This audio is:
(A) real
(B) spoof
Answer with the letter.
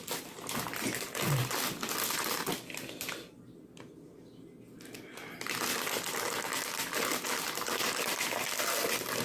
A